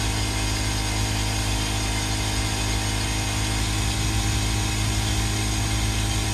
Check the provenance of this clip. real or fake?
real